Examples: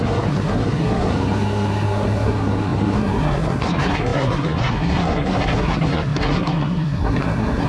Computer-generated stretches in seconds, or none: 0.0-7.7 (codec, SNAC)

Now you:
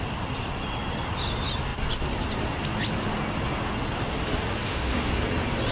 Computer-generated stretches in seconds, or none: 4.6-5.1 (autoencoder, DAC-VAE)

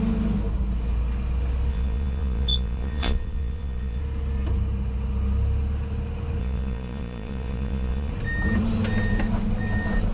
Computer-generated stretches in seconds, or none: 1.7-4.0 (vocoder, Vocos); 6.4-8.1